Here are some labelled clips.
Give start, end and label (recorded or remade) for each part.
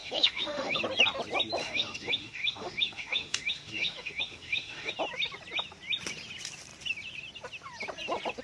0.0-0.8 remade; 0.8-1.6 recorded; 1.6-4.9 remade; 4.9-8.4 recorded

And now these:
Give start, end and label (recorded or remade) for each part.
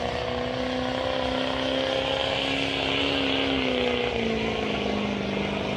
0.0-5.8 recorded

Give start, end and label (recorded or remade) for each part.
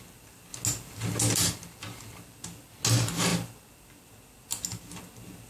0.0-5.5 recorded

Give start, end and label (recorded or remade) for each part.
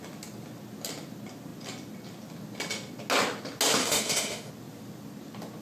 0.0-3.8 recorded; 3.8-4.5 remade; 4.5-5.6 recorded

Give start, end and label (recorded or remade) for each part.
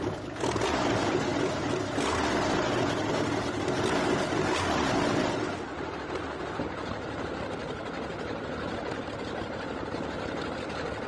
0.0-11.1 recorded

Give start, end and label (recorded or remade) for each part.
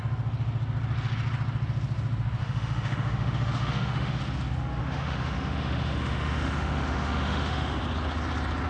0.0-2.4 recorded; 2.4-4.2 remade; 4.2-4.8 recorded; 4.8-7.8 remade; 7.8-8.7 recorded